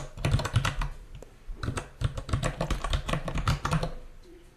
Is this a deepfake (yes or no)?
no